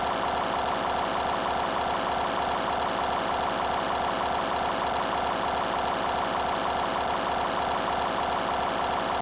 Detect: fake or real real